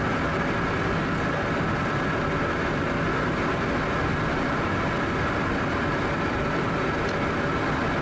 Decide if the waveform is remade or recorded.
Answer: recorded